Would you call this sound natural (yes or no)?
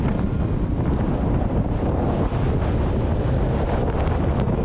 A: yes